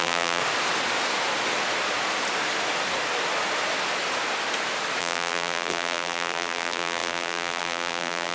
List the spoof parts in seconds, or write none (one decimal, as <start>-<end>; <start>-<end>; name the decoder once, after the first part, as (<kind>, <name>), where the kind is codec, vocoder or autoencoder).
0.0-0.4 (vocoder, BigVGAN v2); 5.0-8.3